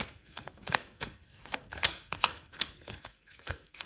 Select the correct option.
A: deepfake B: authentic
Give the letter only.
A